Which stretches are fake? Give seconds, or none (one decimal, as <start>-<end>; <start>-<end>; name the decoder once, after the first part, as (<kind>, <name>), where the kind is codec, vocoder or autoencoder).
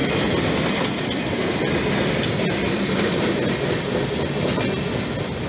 none